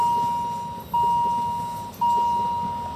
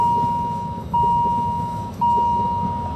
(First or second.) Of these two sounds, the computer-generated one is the second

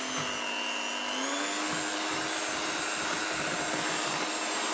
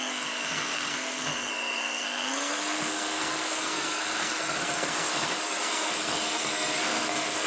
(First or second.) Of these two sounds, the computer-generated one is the second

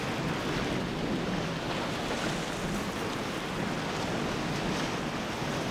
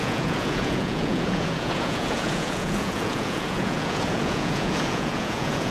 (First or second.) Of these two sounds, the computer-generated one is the second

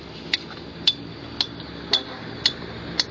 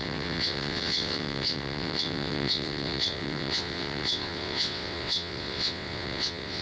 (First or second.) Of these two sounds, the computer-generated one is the second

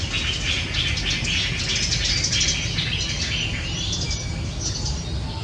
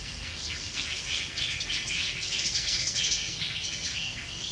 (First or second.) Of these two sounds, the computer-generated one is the second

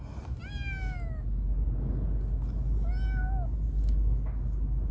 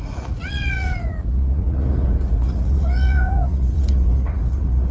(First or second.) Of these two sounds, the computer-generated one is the second